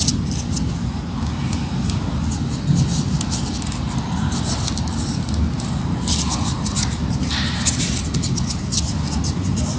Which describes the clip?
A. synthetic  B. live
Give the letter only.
B